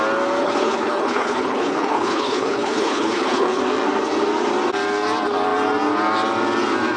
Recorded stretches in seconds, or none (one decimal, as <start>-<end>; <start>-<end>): 0.0-0.4; 3.6-7.0